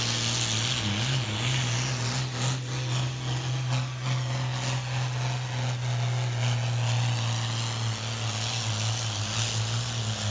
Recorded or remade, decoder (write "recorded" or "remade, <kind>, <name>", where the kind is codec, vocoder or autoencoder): recorded